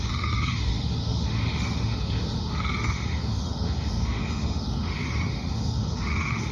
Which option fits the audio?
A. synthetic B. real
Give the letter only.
A